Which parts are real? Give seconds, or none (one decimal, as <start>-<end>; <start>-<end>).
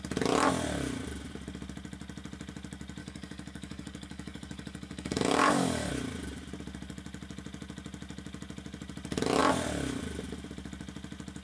0.0-3.0; 5.9-11.4